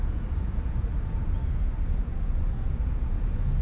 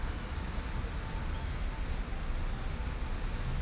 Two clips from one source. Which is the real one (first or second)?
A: second